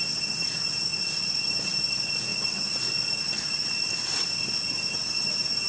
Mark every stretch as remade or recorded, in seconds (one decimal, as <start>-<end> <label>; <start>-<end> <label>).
0.0-5.7 recorded